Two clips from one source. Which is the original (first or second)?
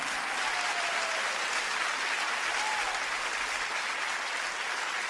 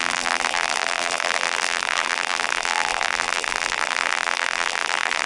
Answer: first